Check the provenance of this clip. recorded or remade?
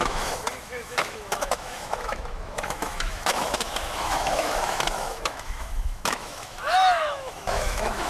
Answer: remade